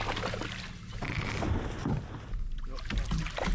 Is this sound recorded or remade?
recorded